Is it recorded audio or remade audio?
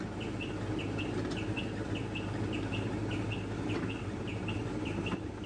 recorded